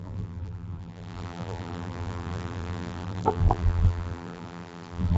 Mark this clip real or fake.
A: fake